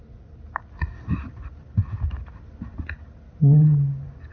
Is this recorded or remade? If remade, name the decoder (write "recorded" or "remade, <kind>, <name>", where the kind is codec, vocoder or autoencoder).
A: recorded